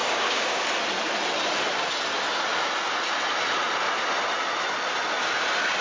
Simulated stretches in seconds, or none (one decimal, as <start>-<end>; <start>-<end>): 0.0-0.6